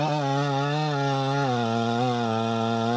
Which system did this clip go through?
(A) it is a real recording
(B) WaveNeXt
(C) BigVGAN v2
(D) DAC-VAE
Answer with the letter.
A